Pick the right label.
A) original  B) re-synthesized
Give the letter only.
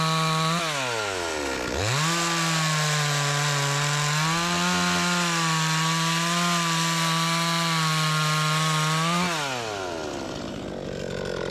A